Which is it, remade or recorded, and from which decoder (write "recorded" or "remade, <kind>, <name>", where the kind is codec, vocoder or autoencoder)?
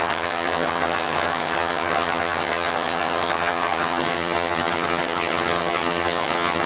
remade, vocoder, HiFi-GAN